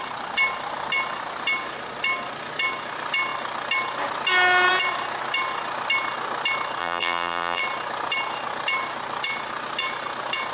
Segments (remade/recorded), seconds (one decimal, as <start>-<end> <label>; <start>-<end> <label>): 0.0-6.8 recorded; 6.8-7.6 remade; 7.6-10.5 recorded